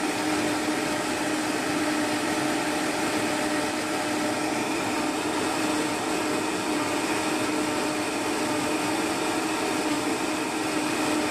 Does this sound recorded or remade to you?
recorded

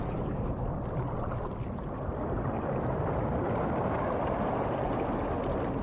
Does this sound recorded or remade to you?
recorded